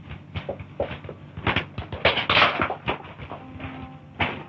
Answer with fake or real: real